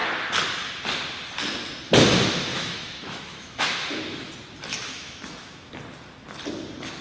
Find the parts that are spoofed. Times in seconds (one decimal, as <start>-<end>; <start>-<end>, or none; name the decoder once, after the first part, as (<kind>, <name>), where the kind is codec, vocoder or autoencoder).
2.5-4.3 (autoencoder, DAC-VAE); 4.7-5.7